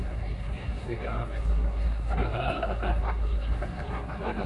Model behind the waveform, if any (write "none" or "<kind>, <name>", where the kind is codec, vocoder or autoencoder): codec, SNAC